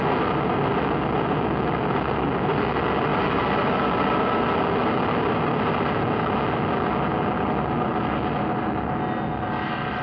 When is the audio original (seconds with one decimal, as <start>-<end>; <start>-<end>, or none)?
0.0-10.0